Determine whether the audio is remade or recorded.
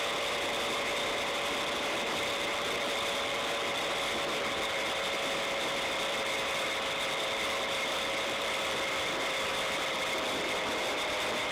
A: remade